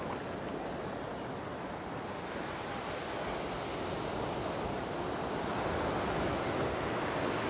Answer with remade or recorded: recorded